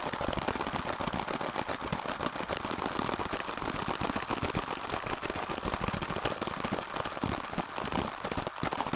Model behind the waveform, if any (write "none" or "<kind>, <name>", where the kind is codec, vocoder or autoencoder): none